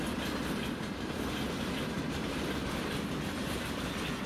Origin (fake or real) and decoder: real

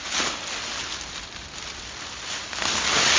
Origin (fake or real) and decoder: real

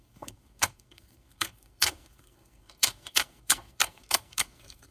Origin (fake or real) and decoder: fake, codec, SNAC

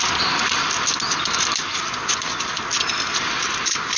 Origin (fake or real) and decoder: real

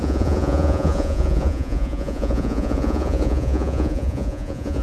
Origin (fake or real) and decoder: fake, vocoder, Vocos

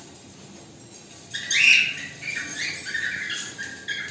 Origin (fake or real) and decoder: real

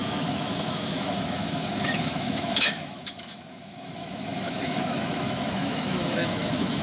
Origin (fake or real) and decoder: fake, autoencoder, DAC-VAE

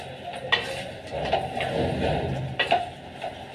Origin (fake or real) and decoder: real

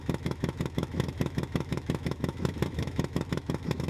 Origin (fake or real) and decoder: fake, autoencoder, DAC-VAE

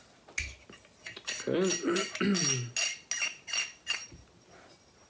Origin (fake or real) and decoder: real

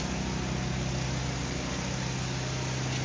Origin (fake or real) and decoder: real